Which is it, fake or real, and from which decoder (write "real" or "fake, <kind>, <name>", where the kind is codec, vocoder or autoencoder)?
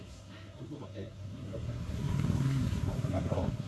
fake, codec, SNAC